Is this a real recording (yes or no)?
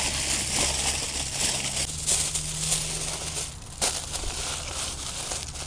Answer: yes